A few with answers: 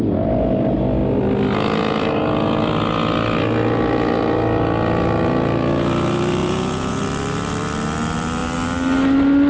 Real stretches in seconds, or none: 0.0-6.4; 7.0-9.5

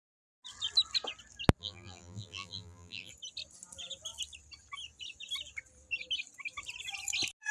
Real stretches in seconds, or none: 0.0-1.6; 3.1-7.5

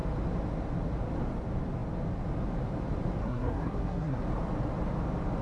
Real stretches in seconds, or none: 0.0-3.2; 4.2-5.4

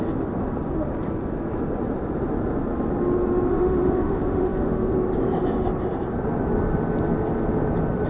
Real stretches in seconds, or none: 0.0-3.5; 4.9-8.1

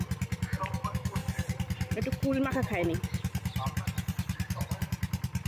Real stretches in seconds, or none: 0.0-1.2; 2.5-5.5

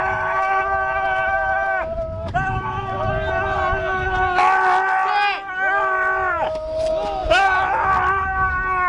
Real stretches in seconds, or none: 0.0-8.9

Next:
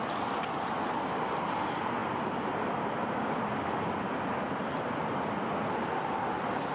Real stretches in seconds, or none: 0.0-6.7